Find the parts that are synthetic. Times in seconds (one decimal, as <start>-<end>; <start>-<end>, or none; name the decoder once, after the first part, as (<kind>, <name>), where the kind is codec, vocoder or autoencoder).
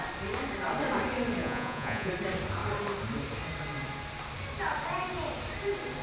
1.4-2.1 (vocoder, Vocos)